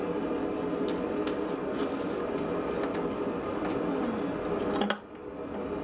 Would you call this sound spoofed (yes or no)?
no